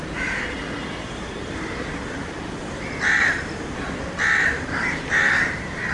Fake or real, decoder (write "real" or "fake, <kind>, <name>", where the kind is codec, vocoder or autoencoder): fake, vocoder, BigVGAN v2